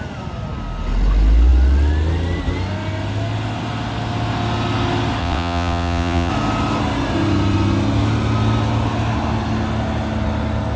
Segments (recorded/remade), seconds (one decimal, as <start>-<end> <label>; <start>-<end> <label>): 0.0-5.2 recorded; 5.2-6.3 remade; 6.3-10.8 recorded